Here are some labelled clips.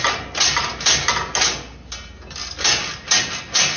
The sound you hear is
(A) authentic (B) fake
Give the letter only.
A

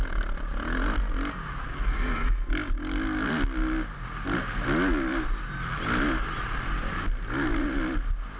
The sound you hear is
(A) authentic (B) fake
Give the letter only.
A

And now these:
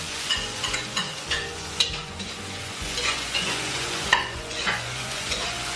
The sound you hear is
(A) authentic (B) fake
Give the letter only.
B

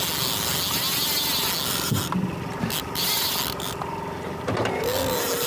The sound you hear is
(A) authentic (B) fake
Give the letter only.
A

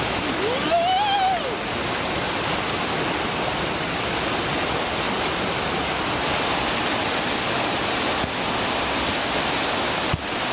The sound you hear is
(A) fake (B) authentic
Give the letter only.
B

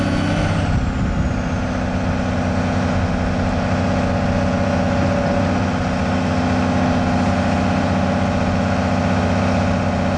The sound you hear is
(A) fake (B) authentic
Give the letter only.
B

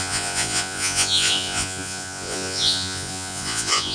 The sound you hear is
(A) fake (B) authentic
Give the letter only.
A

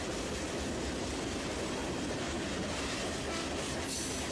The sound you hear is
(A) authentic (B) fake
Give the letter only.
A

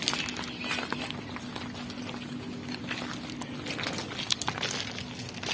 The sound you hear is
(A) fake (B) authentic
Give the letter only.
B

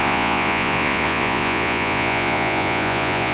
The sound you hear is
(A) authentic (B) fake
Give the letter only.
B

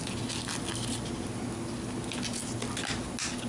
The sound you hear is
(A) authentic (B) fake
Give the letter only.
A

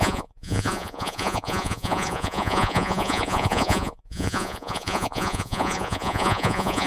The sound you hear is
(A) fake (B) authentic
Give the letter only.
A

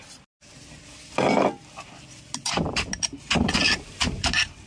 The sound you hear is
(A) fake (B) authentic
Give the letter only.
B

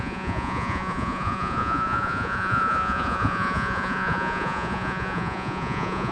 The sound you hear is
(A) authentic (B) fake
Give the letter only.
B